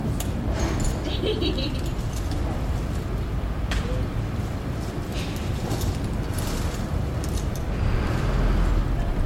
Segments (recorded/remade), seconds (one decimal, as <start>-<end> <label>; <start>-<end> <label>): 0.0-5.1 recorded; 5.1-5.8 remade; 5.8-9.3 recorded